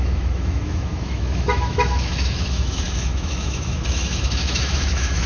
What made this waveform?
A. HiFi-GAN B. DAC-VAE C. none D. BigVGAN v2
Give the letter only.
B